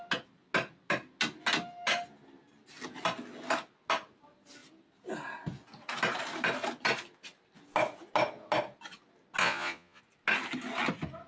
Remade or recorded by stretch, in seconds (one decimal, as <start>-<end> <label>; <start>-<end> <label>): 0.0-9.4 recorded; 9.4-10.0 remade; 10.0-11.3 recorded